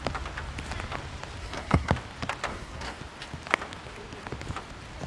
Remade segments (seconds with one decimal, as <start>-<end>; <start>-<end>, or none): 1.4-1.9; 2.5-3.0